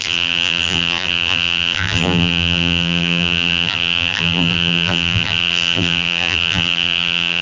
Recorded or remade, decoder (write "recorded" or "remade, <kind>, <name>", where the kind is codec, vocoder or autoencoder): remade, vocoder, BigVGAN v2